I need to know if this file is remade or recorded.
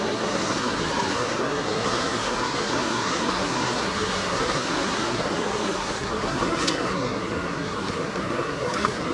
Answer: remade